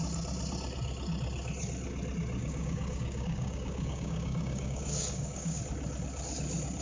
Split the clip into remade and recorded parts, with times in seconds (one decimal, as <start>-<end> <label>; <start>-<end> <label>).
0.0-2.4 recorded; 2.4-5.6 remade; 5.6-6.8 recorded